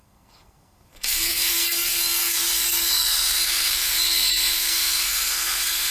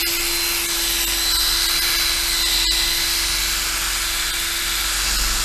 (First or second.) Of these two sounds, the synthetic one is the first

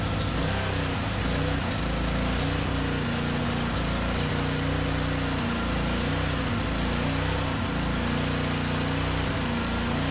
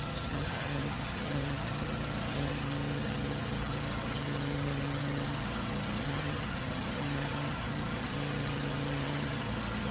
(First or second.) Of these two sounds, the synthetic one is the second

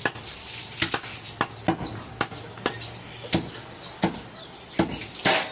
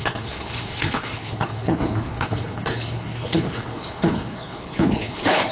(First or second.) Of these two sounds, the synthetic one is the second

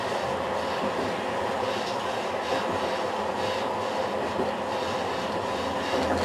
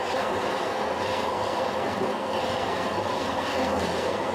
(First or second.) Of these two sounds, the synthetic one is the second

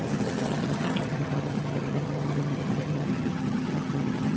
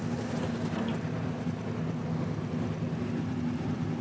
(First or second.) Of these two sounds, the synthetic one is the first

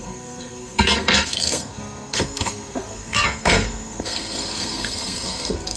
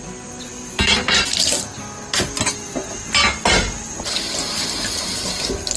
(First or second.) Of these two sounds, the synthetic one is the first